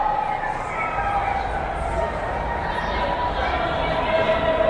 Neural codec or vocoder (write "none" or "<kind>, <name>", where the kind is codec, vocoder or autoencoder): none